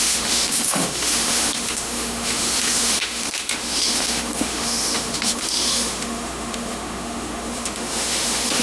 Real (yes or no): no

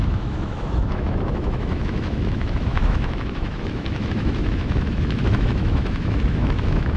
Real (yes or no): no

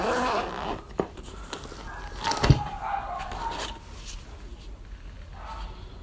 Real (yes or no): yes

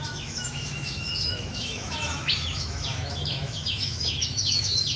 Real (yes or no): no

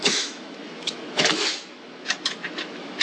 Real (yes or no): no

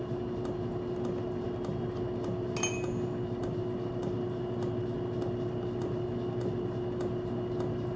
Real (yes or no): yes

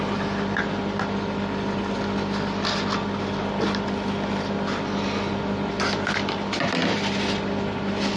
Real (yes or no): yes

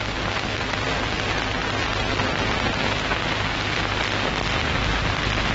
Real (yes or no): yes